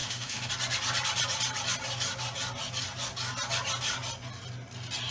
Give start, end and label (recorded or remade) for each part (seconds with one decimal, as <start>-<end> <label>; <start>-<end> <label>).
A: 0.0-0.5 remade; 0.5-5.1 recorded